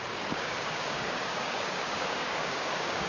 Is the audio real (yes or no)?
no